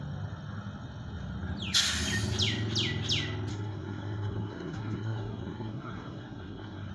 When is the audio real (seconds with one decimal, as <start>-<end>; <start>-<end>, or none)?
0.0-3.5

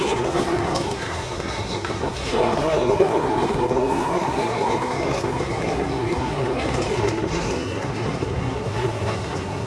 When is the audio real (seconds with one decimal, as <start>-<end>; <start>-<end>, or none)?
none

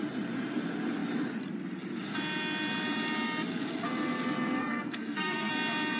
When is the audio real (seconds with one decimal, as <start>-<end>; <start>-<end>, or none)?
0.0-4.6; 5.5-6.0

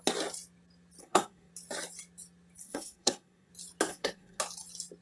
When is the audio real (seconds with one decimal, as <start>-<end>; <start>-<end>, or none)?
0.0-1.0; 1.5-2.6; 3.5-3.9; 4.4-5.0

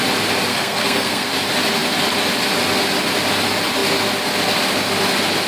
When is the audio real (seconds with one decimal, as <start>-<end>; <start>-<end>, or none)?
0.0-0.5; 1.3-5.5